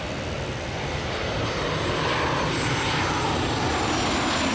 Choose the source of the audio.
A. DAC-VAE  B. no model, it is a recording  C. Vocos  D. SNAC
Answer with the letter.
B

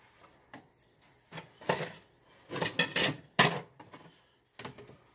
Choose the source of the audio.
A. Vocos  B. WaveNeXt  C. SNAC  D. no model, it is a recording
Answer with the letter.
D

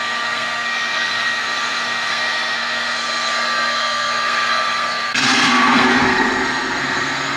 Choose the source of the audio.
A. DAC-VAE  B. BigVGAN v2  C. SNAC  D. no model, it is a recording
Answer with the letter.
C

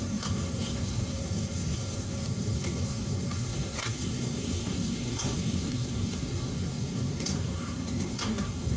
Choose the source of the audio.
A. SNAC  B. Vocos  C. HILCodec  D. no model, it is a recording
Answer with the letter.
A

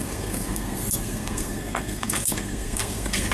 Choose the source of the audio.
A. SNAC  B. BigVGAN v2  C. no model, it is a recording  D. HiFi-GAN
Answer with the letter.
A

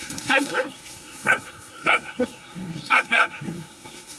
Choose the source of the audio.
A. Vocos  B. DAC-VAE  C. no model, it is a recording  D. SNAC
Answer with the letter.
D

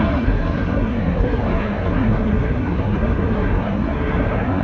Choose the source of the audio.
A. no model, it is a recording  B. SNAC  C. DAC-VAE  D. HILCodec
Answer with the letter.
B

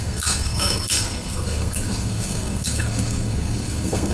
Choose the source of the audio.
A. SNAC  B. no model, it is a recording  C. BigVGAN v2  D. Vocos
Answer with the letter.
A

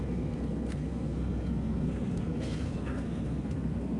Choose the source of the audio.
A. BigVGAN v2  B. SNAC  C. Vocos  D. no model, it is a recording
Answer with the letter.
B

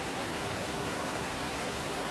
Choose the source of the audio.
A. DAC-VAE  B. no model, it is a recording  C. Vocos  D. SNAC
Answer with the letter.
D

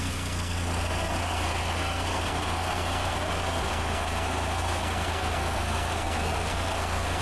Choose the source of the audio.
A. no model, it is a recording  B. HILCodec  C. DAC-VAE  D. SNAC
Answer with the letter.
D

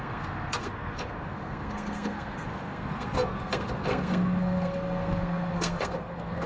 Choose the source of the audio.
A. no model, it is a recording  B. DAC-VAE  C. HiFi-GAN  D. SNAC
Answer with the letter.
D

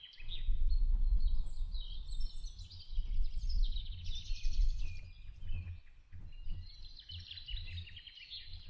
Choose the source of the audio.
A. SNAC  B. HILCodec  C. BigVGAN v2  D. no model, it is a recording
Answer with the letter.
D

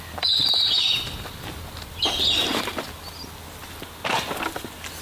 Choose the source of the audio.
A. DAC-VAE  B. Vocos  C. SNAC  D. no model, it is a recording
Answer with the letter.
D